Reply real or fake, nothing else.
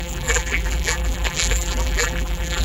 fake